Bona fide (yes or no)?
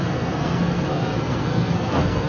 no